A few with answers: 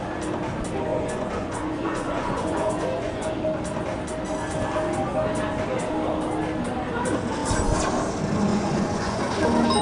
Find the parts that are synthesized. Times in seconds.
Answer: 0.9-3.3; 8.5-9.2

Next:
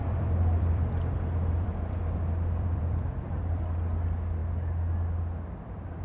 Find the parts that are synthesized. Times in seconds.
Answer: 0.0-3.6

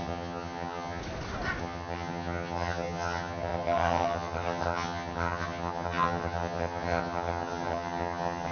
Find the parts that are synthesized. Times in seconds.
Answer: 0.0-1.0; 1.6-8.5

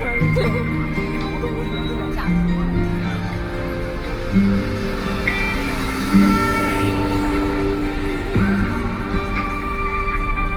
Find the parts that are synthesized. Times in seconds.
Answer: 5.6-6.7

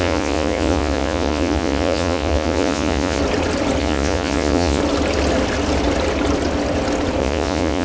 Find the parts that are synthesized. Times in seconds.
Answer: 0.0-3.2; 3.8-4.8; 7.2-7.8

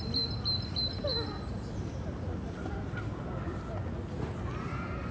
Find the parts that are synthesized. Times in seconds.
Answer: none